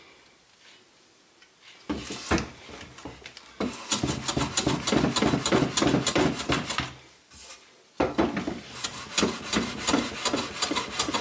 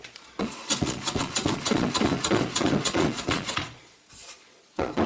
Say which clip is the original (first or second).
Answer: first